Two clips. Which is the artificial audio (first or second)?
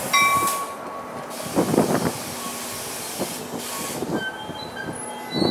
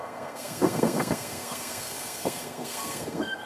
second